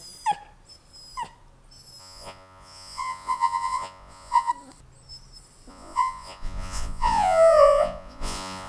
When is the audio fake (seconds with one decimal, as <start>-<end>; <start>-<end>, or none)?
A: 2.0-4.5; 5.7-8.7